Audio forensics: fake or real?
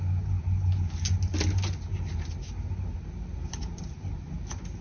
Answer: real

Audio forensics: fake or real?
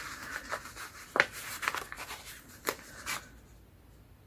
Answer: real